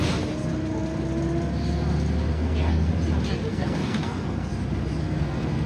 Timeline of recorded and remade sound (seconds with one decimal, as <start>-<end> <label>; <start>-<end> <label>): 0.0-2.3 recorded; 2.3-2.9 remade; 2.9-3.5 recorded; 3.5-4.5 remade; 4.5-5.0 recorded; 5.0-5.7 remade